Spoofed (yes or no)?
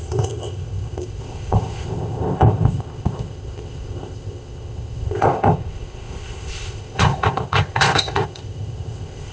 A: yes